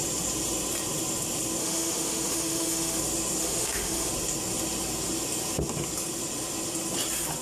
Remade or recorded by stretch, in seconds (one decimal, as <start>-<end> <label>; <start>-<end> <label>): 0.0-1.6 recorded; 1.6-3.0 remade; 3.0-3.4 recorded; 3.4-4.1 remade; 4.1-7.4 recorded